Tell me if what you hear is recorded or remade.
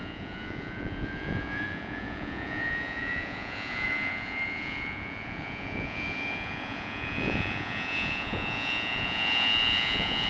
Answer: remade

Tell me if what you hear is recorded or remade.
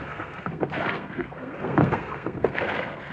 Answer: remade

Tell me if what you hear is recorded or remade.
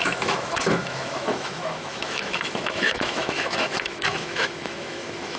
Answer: remade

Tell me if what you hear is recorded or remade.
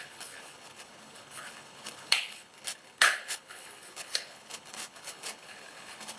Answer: remade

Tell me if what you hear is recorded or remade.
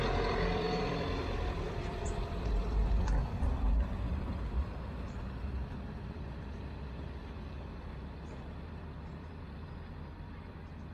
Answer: remade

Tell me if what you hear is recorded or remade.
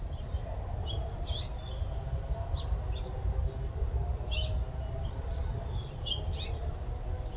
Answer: recorded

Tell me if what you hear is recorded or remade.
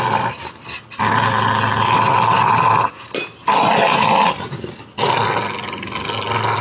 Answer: recorded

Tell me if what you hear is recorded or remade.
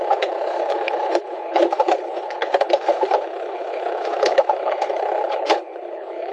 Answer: remade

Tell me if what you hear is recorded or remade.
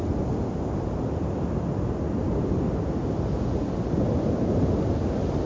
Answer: recorded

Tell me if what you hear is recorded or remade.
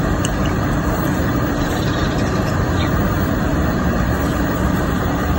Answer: remade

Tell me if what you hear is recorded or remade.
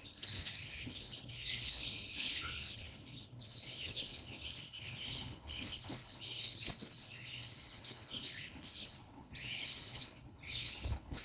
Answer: remade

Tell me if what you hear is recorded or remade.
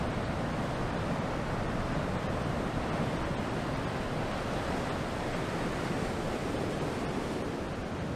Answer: recorded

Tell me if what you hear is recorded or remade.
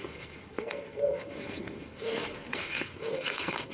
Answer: remade